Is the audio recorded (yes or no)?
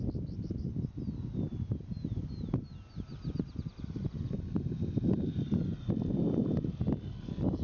yes